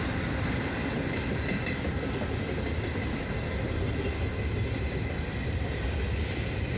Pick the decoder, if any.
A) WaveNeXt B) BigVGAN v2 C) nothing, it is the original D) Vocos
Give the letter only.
C